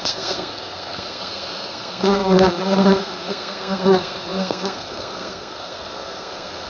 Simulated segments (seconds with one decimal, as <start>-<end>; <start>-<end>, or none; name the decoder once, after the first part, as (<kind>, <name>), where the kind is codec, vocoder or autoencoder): 0.0-6.7 (codec, SNAC)